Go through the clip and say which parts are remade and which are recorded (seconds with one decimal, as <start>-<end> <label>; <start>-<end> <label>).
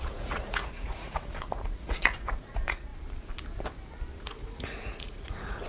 0.0-2.9 remade; 2.9-4.2 recorded; 4.2-5.7 remade